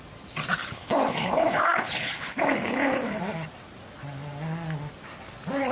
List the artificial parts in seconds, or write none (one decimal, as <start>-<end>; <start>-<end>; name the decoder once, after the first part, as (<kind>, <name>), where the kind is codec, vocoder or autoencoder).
0.6-3.2 (codec, HILCodec)